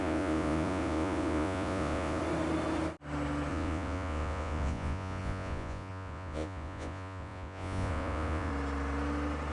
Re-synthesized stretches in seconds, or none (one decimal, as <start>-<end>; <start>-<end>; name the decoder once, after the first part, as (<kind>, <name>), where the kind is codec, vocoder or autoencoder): 0.0-2.2 (vocoder, Vocos); 3.5-8.5